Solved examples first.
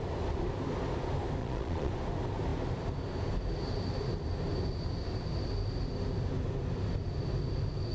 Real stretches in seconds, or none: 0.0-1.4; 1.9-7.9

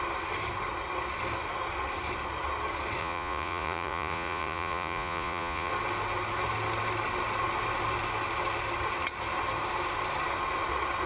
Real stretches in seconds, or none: 0.0-3.0; 5.7-11.1

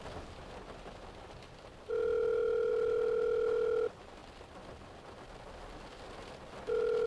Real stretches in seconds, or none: 0.0-7.1

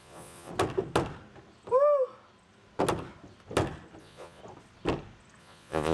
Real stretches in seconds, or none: 0.5-4.0; 4.4-5.4

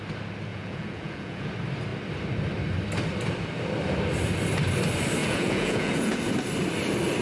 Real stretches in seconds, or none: 0.0-0.5; 1.5-5.2; 6.2-7.2

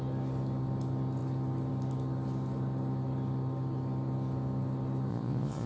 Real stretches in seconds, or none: 0.0-5.1

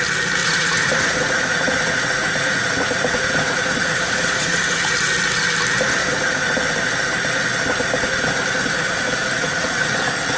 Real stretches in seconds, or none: 0.0-0.4; 4.9-6.0; 6.5-9.2; 10.0-10.4